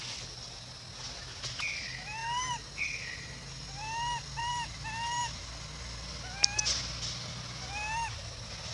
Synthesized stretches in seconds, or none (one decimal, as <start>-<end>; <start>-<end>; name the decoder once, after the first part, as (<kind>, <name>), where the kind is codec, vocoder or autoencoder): none